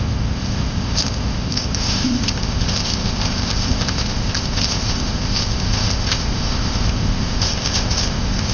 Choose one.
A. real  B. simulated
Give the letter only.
B